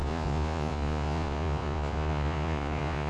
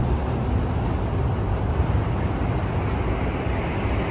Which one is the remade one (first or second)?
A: first